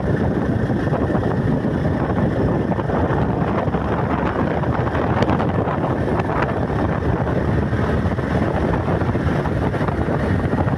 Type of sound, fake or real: real